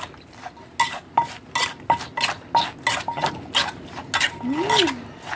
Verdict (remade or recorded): recorded